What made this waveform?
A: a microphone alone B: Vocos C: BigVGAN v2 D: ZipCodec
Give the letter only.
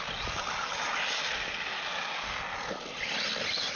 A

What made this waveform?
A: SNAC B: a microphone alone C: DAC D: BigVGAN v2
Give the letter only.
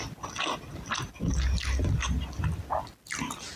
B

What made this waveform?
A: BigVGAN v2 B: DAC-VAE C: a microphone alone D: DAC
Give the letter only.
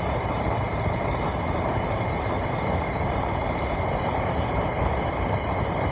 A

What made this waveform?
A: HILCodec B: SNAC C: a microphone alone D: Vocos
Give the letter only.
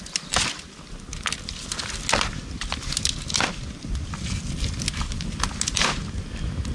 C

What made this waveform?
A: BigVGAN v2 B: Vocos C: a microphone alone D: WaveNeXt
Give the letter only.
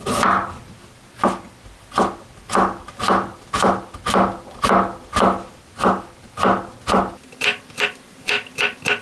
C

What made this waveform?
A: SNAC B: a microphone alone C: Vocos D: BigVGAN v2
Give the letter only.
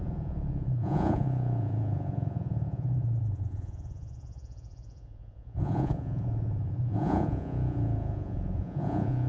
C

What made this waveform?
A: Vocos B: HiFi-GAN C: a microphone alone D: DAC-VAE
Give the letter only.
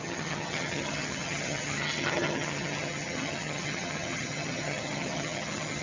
B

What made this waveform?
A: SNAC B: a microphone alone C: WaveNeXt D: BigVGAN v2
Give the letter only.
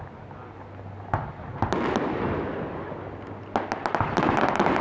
B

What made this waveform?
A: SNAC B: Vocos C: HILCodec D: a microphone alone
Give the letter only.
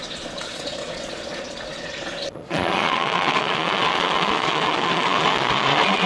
B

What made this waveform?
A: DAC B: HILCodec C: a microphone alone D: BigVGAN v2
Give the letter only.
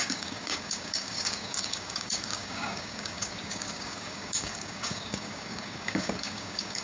A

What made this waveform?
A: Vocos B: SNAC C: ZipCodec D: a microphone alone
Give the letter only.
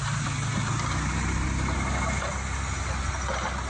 D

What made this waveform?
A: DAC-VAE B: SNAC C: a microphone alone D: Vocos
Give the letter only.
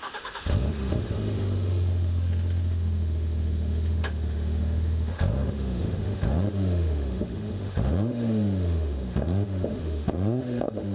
A